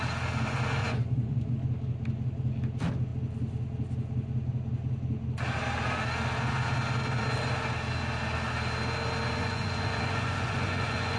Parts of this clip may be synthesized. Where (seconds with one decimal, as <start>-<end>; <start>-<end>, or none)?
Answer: 0.8-1.5; 9.4-11.2